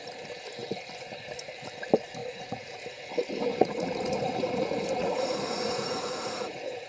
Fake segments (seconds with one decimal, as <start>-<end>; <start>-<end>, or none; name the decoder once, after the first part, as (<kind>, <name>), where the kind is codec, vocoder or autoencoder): 2.2-2.8 (vocoder, Vocos); 3.5-6.9

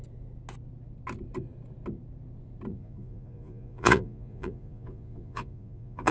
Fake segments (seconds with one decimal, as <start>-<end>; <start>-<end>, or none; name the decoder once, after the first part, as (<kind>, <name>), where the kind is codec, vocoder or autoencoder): 2.7-6.1 (vocoder, Vocos)